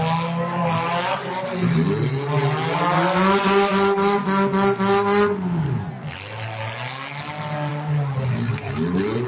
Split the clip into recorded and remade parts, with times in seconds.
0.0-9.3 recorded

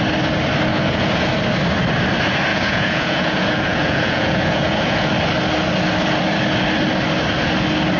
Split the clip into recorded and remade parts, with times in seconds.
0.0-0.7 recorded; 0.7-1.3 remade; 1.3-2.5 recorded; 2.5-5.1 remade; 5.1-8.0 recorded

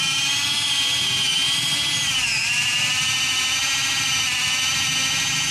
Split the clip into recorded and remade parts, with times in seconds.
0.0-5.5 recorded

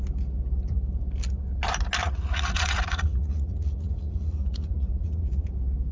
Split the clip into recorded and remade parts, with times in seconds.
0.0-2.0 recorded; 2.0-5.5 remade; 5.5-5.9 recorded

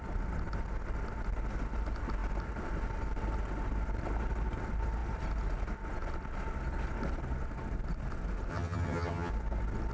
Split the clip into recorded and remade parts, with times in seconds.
0.0-8.5 recorded; 8.5-9.3 remade; 9.3-9.9 recorded

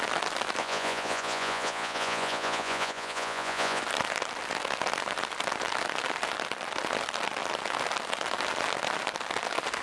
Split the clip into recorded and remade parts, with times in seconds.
0.0-0.6 recorded; 0.6-3.8 remade; 3.8-9.8 recorded

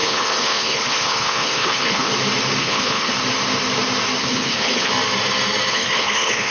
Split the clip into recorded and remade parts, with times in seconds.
0.0-2.1 remade; 2.1-2.6 recorded; 2.6-3.1 remade; 3.1-4.2 recorded; 4.2-4.9 remade; 4.9-5.7 recorded; 5.7-6.5 remade

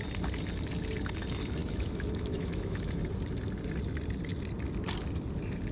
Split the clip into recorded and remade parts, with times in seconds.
0.0-1.6 recorded; 1.6-3.0 remade; 3.0-5.7 recorded